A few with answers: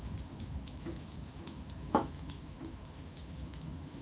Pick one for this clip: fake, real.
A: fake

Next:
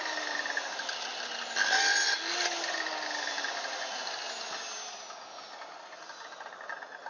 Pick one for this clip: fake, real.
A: real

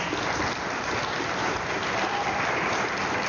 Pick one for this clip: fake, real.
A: real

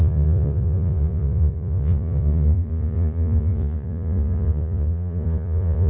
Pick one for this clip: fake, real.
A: fake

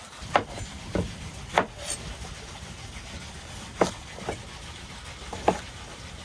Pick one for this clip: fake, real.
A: real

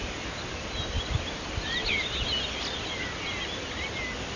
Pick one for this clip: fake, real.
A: real